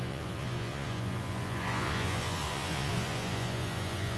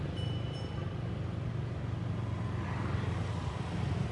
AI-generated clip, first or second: first